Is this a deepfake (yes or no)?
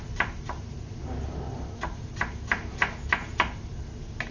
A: no